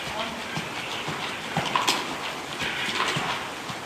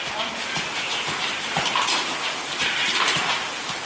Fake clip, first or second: second